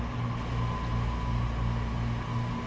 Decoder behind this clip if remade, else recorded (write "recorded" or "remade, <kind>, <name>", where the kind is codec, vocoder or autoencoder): recorded